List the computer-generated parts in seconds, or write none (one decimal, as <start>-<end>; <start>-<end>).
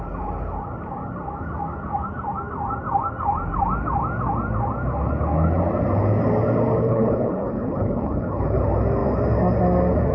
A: 6.8-8.6